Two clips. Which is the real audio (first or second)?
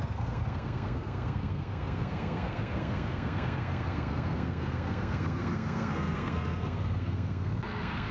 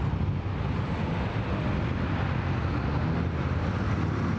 second